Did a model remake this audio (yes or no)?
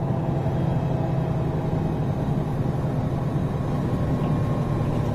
no